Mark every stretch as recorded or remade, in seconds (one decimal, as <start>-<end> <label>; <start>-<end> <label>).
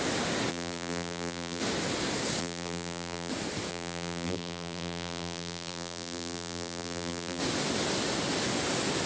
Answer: 0.0-0.5 recorded; 0.5-1.6 remade; 1.6-2.4 recorded; 2.4-3.3 remade; 3.3-3.7 recorded; 3.7-7.4 remade; 7.4-9.1 recorded